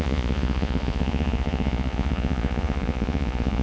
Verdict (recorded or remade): remade